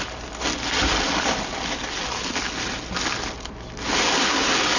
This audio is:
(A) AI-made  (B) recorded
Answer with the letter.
B